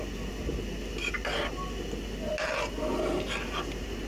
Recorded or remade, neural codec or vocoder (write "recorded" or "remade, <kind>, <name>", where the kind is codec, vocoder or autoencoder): recorded